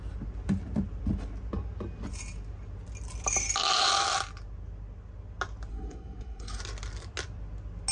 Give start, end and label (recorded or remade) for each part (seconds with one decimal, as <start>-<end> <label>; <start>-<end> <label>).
0.0-5.7 recorded; 5.7-6.6 remade; 6.6-7.9 recorded